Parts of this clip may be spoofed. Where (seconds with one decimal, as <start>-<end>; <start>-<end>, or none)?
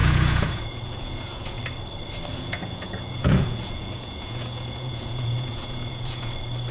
0.0-1.6; 2.3-6.3